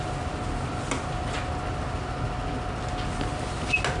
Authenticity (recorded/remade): recorded